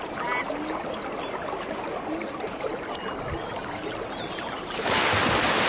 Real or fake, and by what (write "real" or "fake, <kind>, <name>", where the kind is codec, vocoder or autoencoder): real